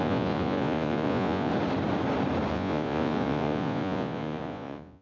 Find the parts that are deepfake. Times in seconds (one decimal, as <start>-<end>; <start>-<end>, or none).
0.0-1.5; 2.5-5.0